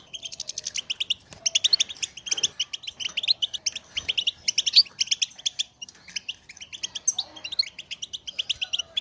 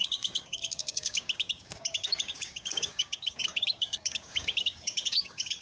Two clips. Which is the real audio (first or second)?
first